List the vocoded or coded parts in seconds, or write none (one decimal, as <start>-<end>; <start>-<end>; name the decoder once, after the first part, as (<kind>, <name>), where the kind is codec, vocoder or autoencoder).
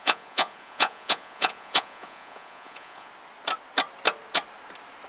0.0-3.1 (vocoder, Vocos)